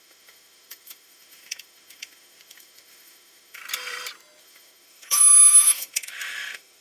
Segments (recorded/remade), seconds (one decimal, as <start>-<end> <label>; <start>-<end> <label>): 0.0-3.6 remade; 3.6-4.4 recorded; 4.4-6.8 remade